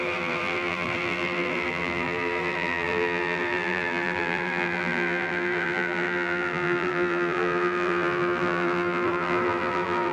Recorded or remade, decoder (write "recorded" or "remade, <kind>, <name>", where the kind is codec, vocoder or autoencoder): remade, vocoder, BigVGAN v2